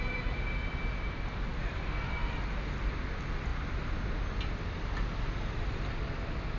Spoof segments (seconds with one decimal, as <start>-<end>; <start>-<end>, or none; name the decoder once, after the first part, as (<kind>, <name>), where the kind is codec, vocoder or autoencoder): none

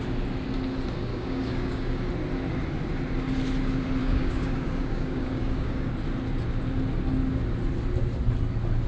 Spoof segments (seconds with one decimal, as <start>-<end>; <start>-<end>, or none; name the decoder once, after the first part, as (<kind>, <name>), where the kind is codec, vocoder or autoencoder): 1.1-2.1 (codec, DAC); 4.0-5.9

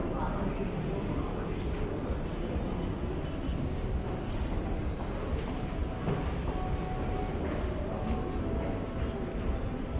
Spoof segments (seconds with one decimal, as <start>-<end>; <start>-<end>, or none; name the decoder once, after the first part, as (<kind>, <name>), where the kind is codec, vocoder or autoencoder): 1.3-2.0 (codec, DAC)

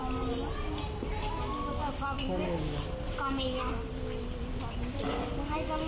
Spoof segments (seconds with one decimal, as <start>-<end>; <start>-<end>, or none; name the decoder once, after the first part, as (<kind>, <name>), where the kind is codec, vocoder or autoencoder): none

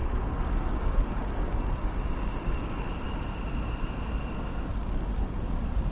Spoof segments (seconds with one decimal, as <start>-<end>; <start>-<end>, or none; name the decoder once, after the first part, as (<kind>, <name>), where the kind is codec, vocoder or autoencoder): 0.0-2.9 (codec, DAC); 4.7-5.4

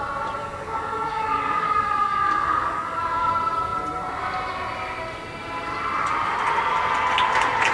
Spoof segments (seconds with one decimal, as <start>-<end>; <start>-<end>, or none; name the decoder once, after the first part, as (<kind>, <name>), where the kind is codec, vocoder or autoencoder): 0.4-3.3 (codec, DAC)

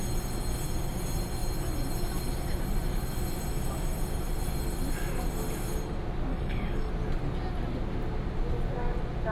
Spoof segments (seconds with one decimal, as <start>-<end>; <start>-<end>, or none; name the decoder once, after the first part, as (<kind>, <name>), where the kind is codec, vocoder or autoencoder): 6.3-6.9 (codec, DAC)